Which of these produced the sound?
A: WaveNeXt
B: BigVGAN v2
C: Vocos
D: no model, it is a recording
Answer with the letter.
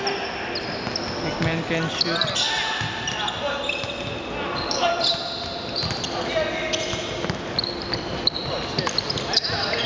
D